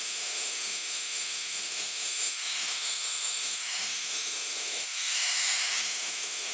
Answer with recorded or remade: remade